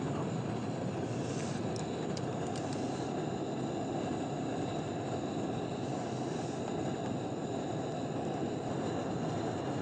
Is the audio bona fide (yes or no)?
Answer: yes